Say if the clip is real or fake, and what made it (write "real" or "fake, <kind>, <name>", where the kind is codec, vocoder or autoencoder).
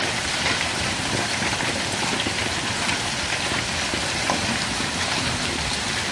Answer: fake, vocoder, BigVGAN v2